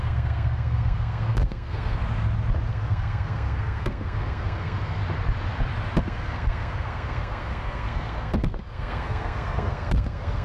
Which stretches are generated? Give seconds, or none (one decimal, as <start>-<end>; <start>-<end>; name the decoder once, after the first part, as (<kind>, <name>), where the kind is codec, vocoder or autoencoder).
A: 0.0-2.0 (codec, SNAC); 2.7-5.0; 6.0-10.4